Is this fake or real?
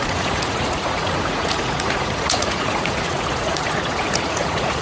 fake